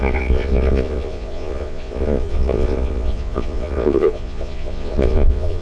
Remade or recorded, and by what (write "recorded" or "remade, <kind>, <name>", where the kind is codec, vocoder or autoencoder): remade, vocoder, Vocos